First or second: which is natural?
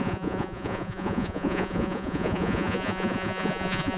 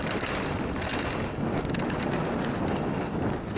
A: second